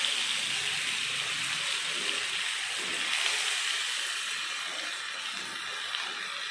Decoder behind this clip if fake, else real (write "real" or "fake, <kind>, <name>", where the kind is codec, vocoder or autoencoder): real